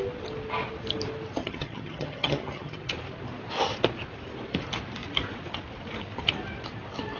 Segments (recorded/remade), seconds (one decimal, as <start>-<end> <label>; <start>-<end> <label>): 0.0-1.4 recorded; 1.4-2.9 remade; 2.9-7.2 recorded